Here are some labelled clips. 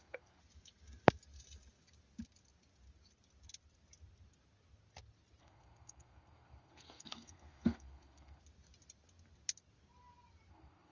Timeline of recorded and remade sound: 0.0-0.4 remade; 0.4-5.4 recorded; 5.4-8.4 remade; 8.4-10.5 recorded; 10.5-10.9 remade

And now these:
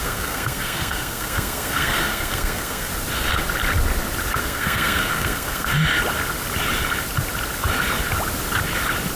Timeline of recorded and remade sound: 0.0-2.9 remade; 2.9-4.4 recorded; 4.4-5.7 remade; 5.7-9.2 recorded

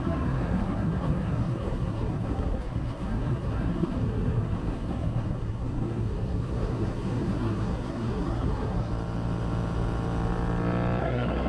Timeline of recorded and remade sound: 0.0-8.9 remade; 8.9-11.0 recorded; 11.0-11.5 remade

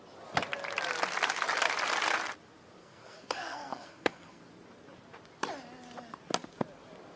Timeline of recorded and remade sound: 0.0-2.8 recorded; 2.8-4.4 remade; 4.4-7.2 recorded

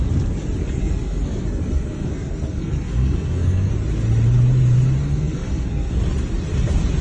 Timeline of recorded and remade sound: 0.0-0.6 recorded; 0.6-3.7 remade; 3.7-5.0 recorded; 5.0-6.0 remade; 6.0-7.0 recorded

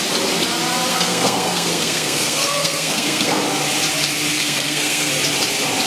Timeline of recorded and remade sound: 0.0-0.9 recorded; 0.9-3.4 remade; 3.4-4.3 recorded; 4.3-5.1 remade; 5.1-5.9 recorded